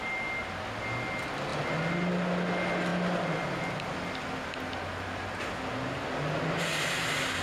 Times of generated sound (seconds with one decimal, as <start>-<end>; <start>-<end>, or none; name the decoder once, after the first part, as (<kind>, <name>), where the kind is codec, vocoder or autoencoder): none